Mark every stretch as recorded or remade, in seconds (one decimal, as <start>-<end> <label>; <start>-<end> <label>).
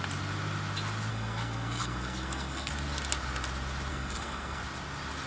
0.0-1.1 recorded; 1.1-2.7 remade; 2.7-3.9 recorded; 3.9-4.6 remade; 4.6-5.3 recorded